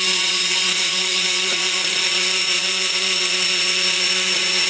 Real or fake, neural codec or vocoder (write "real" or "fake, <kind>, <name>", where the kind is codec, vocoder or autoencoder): fake, vocoder, Vocos